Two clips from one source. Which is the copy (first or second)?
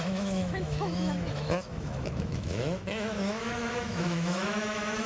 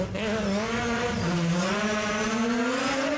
first